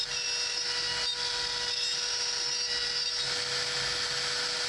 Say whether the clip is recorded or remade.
recorded